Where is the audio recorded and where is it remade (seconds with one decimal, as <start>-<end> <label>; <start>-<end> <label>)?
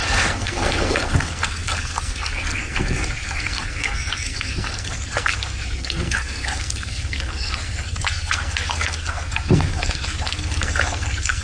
0.0-11.4 remade